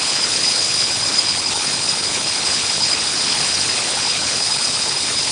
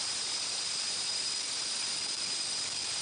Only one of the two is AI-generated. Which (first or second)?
first